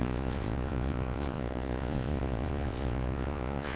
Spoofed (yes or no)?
yes